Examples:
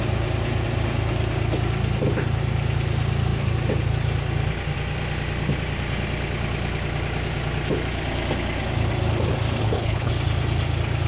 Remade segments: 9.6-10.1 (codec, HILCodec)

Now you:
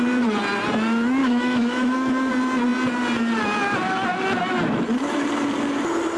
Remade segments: 1.2-2.3 (autoencoder, DAC-VAE)

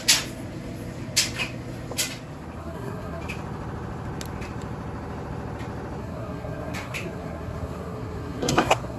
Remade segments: 2.6-3.2 (codec, SNAC); 6.0-9.0